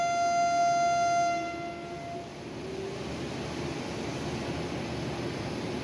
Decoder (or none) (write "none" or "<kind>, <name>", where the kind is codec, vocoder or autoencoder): none